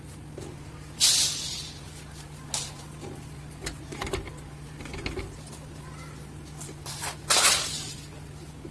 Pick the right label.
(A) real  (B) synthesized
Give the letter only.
A